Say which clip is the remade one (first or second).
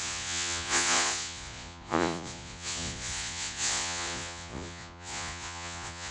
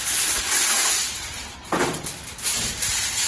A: first